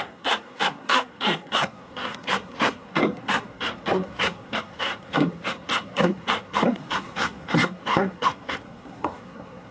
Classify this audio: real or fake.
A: fake